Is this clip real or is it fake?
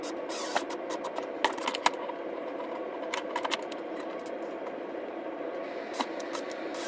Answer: real